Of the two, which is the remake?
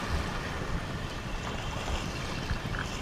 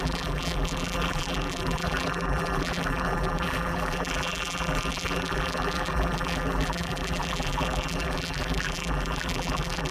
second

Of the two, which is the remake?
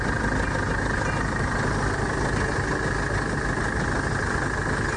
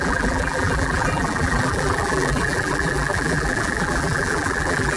second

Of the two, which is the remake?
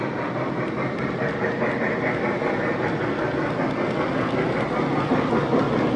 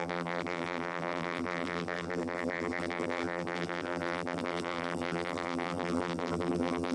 second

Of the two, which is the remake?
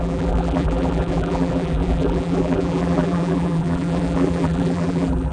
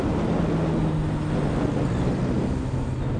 first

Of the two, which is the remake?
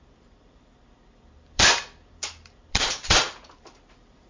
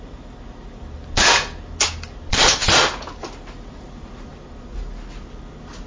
first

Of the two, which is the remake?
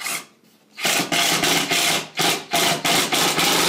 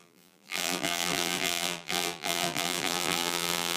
second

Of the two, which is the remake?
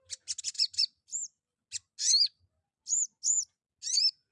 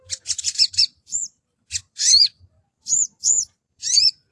second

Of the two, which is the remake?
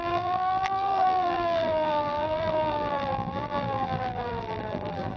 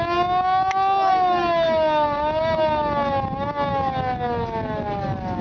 first